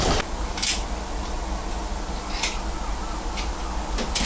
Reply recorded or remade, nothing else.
recorded